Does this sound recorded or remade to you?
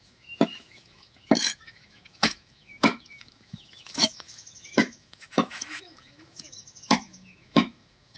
remade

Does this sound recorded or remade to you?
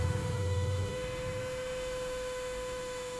remade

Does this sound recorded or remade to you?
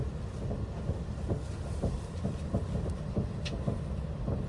recorded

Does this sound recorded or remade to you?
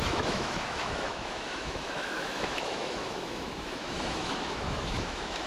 remade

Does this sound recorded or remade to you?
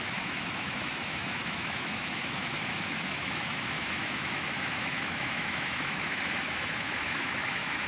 remade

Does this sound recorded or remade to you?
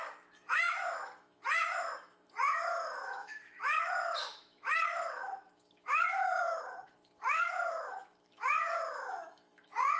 remade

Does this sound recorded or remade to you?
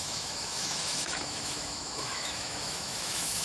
remade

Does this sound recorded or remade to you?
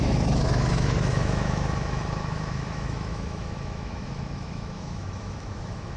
remade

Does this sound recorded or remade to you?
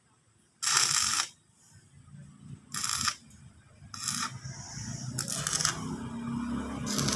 recorded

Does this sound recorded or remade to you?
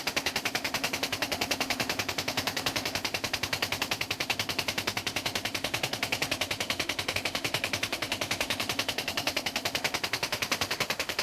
remade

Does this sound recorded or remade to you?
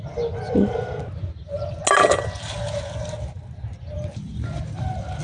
recorded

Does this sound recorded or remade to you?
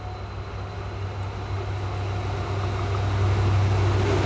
recorded